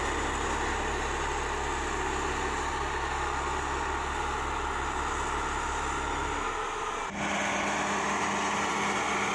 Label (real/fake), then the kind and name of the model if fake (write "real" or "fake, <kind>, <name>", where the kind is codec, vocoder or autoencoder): real